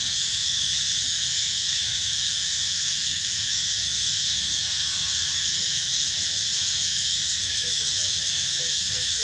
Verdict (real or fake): fake